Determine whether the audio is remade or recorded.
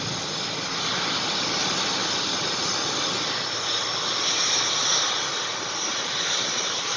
recorded